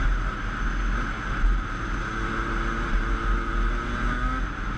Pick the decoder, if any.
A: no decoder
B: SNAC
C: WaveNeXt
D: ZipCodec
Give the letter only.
A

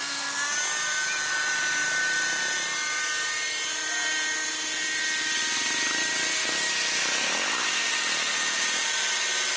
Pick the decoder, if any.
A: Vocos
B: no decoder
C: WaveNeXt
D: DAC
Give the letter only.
B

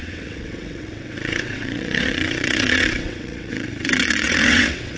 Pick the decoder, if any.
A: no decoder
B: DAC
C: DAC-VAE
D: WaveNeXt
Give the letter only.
D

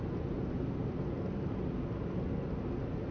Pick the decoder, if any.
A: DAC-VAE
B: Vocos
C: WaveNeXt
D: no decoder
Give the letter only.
D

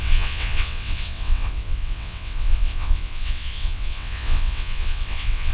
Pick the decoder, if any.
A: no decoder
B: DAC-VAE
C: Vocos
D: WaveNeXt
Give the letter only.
D